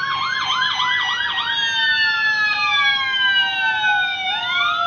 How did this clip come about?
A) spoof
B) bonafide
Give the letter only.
B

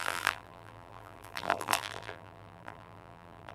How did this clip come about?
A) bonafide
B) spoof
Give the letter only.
B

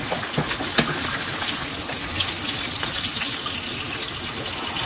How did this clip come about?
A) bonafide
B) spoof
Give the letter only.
A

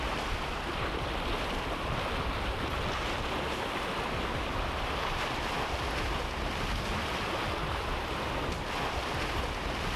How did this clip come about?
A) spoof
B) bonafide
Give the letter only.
B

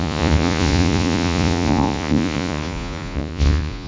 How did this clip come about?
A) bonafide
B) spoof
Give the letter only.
B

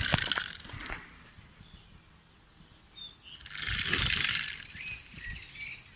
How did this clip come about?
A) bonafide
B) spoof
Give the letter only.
A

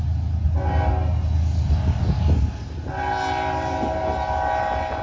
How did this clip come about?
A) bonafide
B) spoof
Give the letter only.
A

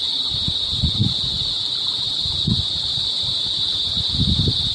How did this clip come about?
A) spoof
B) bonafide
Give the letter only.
B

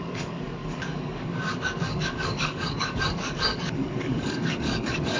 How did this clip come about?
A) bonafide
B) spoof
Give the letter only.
B